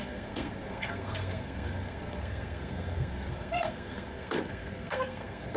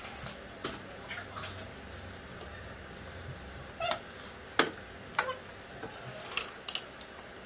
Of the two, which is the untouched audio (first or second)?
second